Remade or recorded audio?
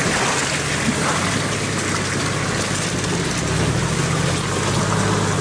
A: recorded